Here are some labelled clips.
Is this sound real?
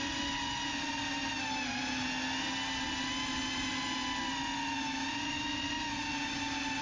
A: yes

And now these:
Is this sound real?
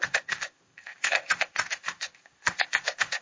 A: no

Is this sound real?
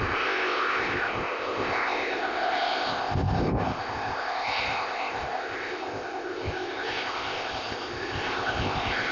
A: no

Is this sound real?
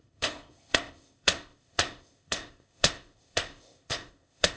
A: no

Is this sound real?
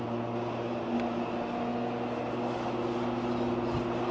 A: yes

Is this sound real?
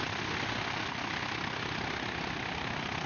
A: yes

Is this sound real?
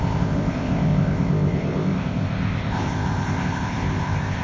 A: no